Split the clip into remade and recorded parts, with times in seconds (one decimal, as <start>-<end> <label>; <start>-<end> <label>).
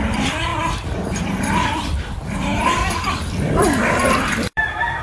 0.0-0.5 remade; 0.5-1.2 recorded; 1.2-2.8 remade; 2.8-3.3 recorded; 3.3-5.0 remade